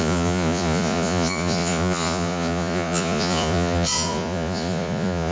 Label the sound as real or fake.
fake